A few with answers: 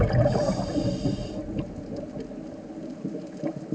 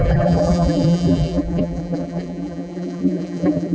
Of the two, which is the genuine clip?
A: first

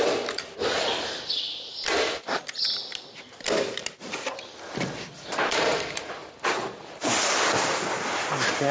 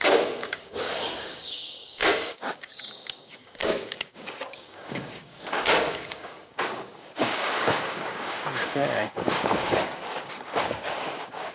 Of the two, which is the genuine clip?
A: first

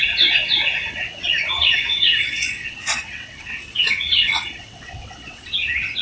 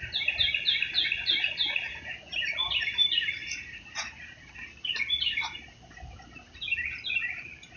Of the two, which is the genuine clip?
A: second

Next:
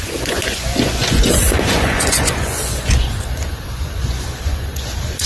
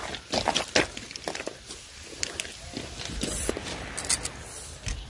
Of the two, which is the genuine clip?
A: second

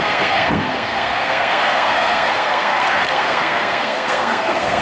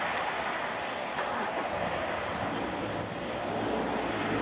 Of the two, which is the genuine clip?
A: second